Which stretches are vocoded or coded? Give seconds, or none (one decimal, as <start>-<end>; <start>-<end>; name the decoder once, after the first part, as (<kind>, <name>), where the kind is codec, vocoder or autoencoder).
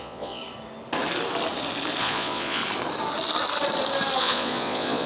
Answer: 0.0-0.4 (vocoder, Vocos); 2.0-2.6; 4.2-5.1